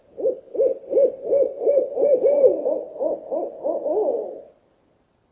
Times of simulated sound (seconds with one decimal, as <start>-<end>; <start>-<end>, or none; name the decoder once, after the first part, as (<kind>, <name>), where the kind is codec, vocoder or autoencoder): 0.7-3.3 (vocoder, BigVGAN v2)